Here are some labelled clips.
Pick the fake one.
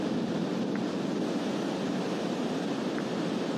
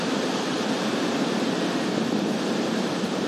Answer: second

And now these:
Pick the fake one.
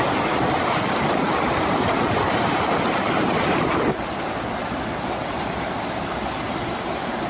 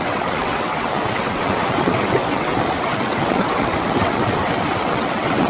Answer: second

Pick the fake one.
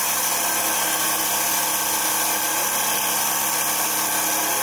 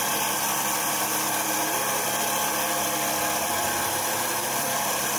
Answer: second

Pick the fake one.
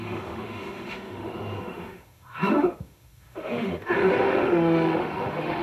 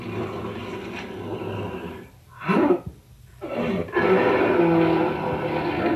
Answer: first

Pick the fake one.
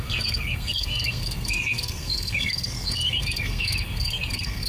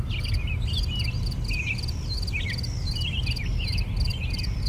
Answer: first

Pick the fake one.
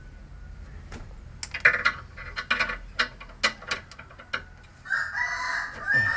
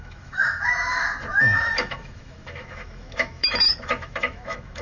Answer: second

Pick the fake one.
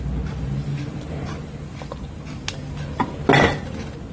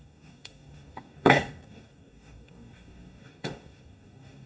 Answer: second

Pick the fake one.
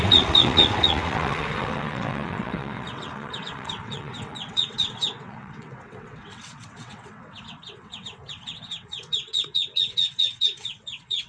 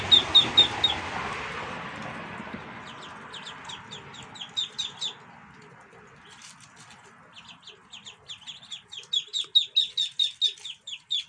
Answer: first